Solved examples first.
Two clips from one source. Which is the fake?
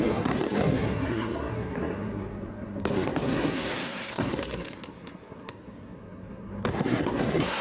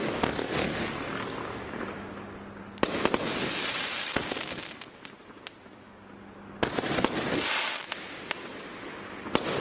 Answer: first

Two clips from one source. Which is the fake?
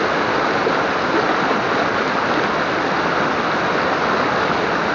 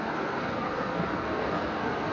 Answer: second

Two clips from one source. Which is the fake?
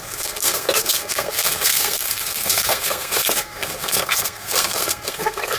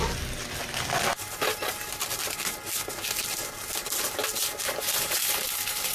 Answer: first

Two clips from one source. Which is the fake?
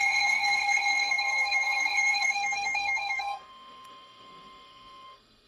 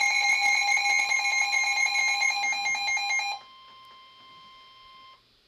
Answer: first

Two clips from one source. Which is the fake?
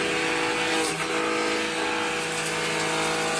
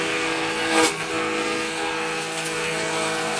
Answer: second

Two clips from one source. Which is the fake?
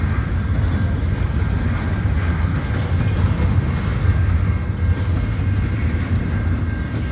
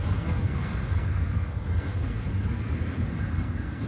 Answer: second